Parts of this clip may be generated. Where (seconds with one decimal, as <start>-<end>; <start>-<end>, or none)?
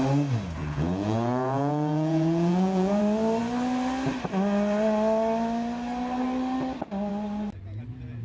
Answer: 0.6-3.0